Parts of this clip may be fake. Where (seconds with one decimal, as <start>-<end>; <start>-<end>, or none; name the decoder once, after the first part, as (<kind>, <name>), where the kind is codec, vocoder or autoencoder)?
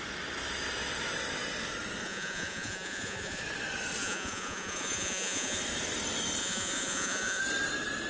2.0-3.4 (vocoder, Vocos); 4.0-5.6; 6.4-7.4